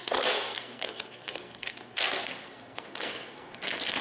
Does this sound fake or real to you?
fake